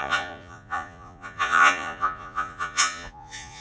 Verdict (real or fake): fake